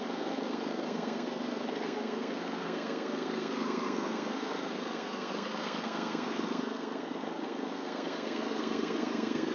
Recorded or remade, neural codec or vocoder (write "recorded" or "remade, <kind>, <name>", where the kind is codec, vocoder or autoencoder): remade, codec, SNAC